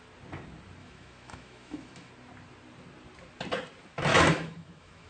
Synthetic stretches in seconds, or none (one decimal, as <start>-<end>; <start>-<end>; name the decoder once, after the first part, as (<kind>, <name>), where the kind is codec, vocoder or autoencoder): 0.8-2.1 (autoencoder, DAC-VAE); 4.1-5.1